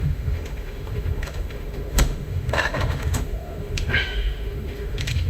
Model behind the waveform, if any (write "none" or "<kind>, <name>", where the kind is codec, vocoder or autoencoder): autoencoder, DAC-VAE